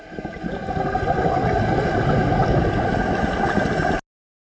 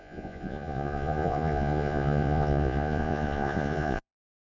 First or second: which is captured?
first